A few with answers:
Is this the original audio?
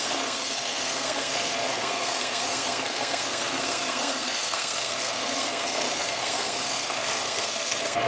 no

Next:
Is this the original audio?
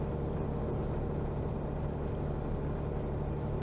yes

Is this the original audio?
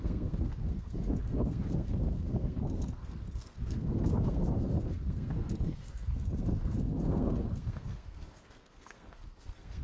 no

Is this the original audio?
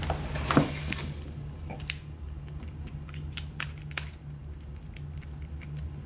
yes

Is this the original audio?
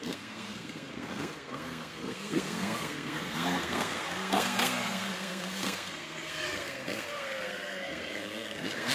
no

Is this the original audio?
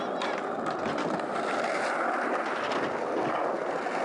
yes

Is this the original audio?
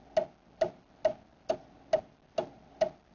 yes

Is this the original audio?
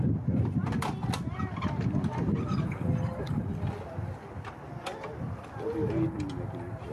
yes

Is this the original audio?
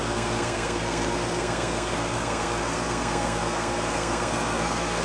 no